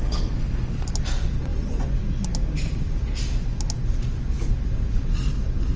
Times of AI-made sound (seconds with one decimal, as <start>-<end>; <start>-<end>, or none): 0.0-0.9